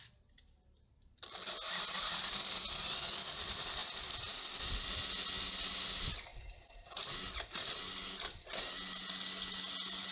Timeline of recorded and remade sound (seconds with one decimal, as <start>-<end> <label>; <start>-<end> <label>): 0.0-10.1 recorded